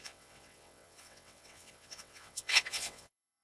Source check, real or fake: fake